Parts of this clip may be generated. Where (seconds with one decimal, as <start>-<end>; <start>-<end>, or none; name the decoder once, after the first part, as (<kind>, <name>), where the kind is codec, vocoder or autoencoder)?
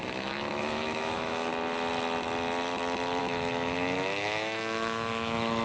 0.0-1.5 (autoencoder, DAC-VAE); 3.2-5.6